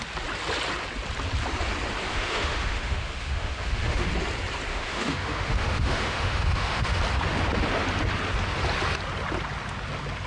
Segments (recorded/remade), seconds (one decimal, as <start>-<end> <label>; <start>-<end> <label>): 0.0-2.1 recorded; 2.1-4.1 remade; 4.1-4.7 recorded; 4.7-7.0 remade; 7.0-10.3 recorded